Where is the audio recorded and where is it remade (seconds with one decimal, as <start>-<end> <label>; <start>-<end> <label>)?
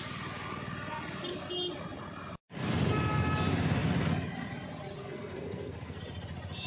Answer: 0.0-5.0 recorded; 5.0-6.0 remade; 6.0-6.7 recorded